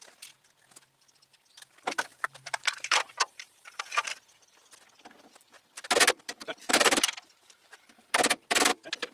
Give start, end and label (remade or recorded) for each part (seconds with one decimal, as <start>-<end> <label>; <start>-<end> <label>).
0.0-2.1 recorded; 2.1-4.1 remade; 4.1-6.4 recorded; 6.4-8.1 remade; 8.1-9.1 recorded